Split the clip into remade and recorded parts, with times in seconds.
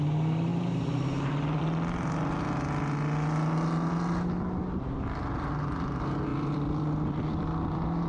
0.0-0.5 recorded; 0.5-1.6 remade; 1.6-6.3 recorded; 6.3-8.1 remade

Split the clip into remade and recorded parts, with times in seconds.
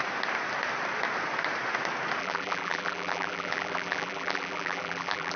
0.0-2.2 recorded; 2.2-5.4 remade